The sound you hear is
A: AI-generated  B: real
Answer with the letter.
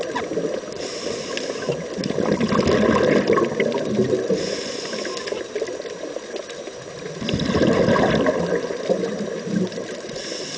B